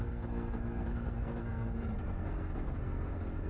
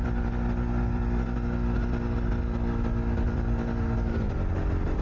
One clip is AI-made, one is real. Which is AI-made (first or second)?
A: first